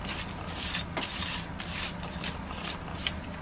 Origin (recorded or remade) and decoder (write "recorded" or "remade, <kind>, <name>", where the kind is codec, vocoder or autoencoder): recorded